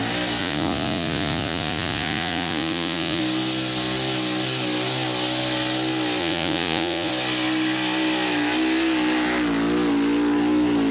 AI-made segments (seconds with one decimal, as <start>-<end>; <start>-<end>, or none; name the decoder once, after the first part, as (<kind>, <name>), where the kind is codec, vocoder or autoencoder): 0.4-3.2 (vocoder, Vocos); 6.2-7.1